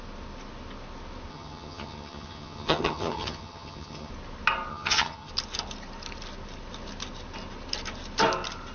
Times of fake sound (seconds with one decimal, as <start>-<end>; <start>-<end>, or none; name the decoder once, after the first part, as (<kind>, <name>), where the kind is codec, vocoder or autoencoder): 1.3-4.1 (vocoder, HiFi-GAN); 4.7-5.3